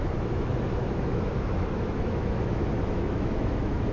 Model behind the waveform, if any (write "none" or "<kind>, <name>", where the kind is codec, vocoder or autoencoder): autoencoder, DAC-VAE